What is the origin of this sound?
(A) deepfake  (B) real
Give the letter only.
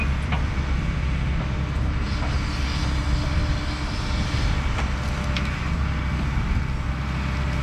B